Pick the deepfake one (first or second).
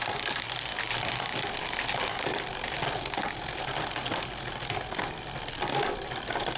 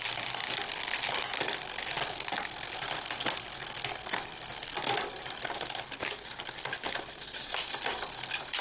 first